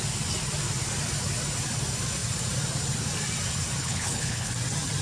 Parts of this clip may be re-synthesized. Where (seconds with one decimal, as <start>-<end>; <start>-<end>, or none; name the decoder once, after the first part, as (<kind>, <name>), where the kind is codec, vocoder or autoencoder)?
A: 3.8-4.5 (codec, HILCodec)